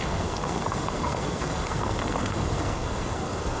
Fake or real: fake